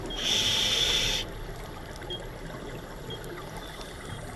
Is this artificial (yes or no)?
no